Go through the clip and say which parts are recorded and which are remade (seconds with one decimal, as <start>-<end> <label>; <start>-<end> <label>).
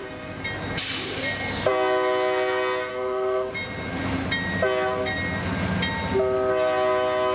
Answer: 0.0-2.9 recorded; 2.9-3.5 remade; 3.5-7.3 recorded